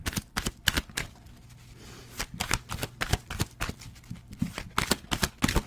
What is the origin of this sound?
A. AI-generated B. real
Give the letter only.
B